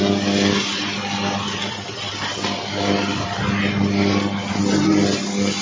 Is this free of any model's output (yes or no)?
yes